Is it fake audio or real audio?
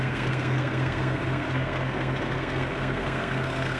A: fake